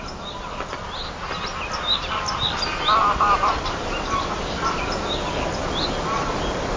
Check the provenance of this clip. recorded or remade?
recorded